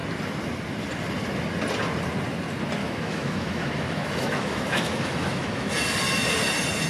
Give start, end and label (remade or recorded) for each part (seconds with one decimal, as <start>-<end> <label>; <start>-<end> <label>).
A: 0.0-2.8 recorded; 2.8-5.7 remade; 5.7-6.9 recorded